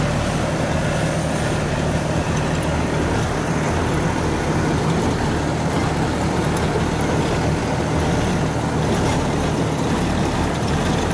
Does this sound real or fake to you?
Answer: real